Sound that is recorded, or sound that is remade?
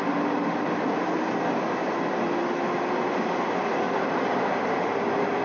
recorded